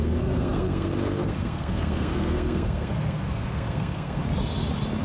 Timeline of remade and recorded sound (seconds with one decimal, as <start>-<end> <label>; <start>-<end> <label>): 0.0-4.2 remade; 4.2-5.0 recorded